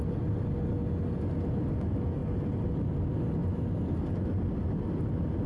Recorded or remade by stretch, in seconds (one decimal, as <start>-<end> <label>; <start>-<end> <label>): 0.0-5.5 recorded